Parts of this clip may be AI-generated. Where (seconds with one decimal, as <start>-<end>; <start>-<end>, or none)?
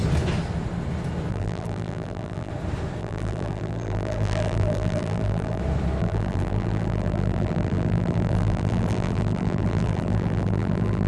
1.3-2.5; 3.0-5.6; 6.0-11.1